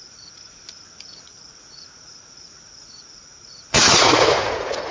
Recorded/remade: remade